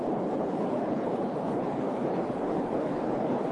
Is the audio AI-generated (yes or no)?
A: yes